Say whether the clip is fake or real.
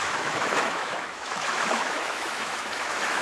fake